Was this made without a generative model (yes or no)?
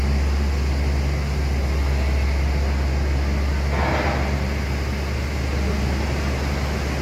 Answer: yes